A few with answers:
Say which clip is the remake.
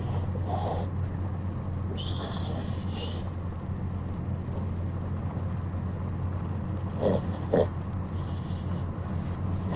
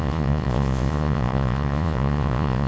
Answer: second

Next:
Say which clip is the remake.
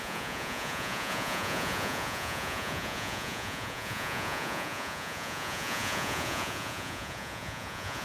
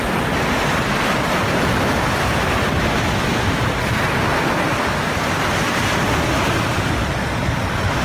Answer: first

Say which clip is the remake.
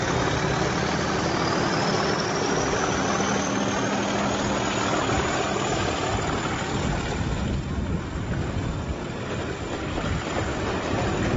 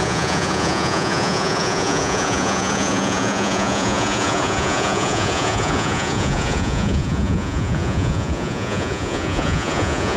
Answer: second